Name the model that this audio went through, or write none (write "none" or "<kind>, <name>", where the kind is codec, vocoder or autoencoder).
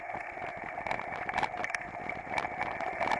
none